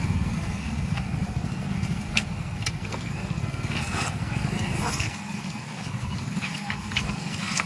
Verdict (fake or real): fake